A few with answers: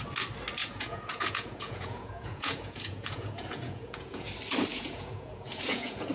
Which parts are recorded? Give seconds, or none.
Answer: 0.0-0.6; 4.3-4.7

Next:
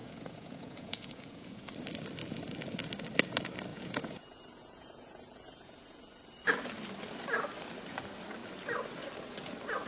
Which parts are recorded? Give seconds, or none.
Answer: 1.7-3.7; 6.0-9.9

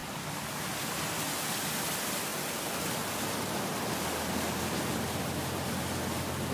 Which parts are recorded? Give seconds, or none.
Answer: 0.0-6.5